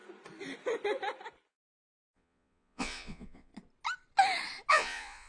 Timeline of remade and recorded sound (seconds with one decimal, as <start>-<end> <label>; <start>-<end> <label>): 0.0-1.5 recorded; 1.5-3.5 remade; 3.5-4.7 recorded; 4.7-5.3 remade